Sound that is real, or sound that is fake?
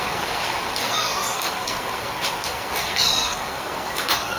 fake